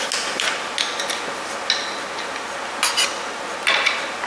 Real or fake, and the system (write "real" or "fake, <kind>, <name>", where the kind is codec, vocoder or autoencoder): real